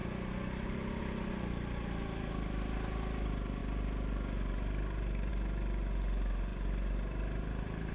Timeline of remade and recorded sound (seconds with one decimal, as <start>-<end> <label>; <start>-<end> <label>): 0.0-7.9 recorded